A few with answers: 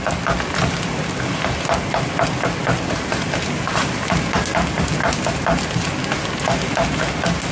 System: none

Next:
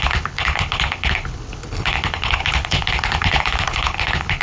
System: codec, HILCodec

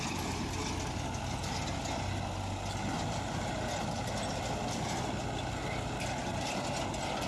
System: none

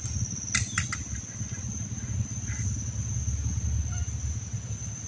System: none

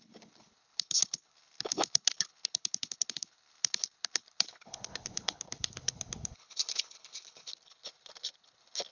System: codec, HILCodec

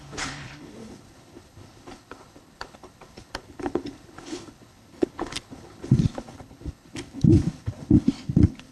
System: codec, HILCodec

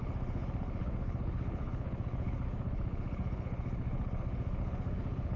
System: codec, HILCodec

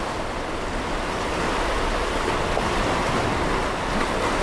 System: none